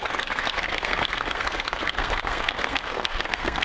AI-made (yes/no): yes